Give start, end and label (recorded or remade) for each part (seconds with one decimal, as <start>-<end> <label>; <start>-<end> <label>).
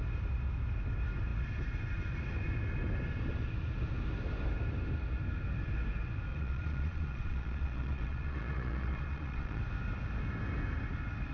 0.0-6.3 recorded; 6.3-9.6 remade; 9.6-11.3 recorded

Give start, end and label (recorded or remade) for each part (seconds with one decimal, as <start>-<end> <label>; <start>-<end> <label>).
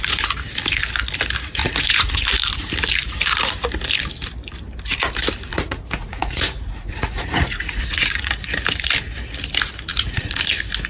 0.0-1.6 recorded; 1.6-2.2 remade; 2.2-5.5 recorded; 5.5-8.3 remade; 8.3-9.9 recorded; 9.9-10.4 remade; 10.4-10.9 recorded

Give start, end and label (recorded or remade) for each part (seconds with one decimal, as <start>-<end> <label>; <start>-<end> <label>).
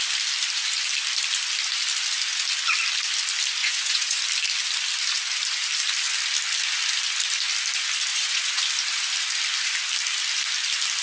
0.0-3.6 recorded; 3.6-4.2 remade; 4.2-8.1 recorded; 8.1-8.6 remade; 8.6-11.0 recorded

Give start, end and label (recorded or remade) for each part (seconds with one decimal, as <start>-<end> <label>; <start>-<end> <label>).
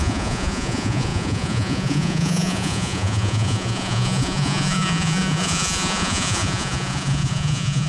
0.0-7.9 remade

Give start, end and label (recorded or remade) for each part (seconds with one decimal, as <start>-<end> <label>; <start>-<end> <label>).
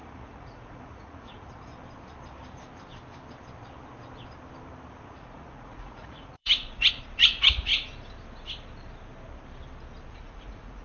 0.0-1.7 remade; 1.7-5.1 recorded; 5.1-7.7 remade; 7.7-10.1 recorded; 10.1-10.8 remade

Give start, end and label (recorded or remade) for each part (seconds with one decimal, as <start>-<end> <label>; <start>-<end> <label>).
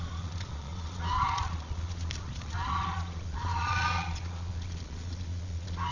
0.0-5.9 remade